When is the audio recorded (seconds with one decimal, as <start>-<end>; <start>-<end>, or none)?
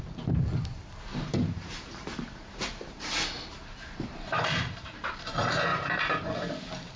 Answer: 0.0-1.1; 5.3-5.7; 6.4-7.0